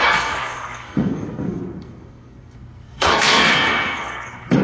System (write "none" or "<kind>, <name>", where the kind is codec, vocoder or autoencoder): codec, SNAC